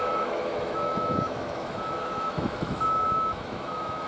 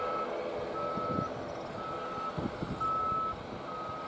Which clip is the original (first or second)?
second